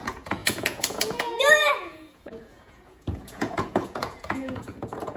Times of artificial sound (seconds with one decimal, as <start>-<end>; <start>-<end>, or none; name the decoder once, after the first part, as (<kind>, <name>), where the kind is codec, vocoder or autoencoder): 0.0-5.2 (vocoder, Vocos)